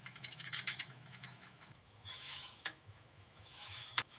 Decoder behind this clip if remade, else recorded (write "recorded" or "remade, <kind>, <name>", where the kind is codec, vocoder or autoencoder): remade, autoencoder, DAC-VAE